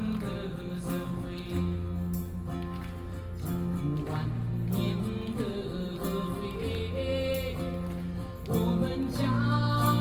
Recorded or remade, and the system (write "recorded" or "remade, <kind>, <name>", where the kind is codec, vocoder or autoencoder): recorded